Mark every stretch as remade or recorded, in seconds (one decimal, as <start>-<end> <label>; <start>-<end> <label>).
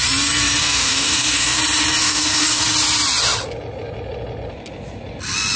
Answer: 0.0-0.6 recorded; 0.6-1.6 remade; 1.6-2.0 recorded; 2.0-2.6 remade; 2.6-5.6 recorded